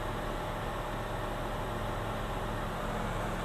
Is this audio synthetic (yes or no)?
no